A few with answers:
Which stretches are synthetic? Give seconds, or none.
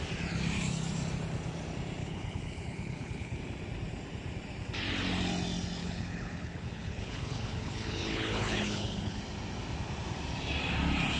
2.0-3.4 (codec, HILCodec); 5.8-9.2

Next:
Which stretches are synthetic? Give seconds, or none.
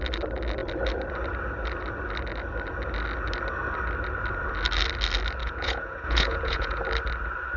5.4-6.8 (vocoder, Vocos)